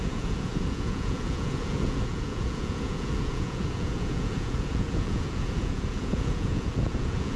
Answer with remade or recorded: remade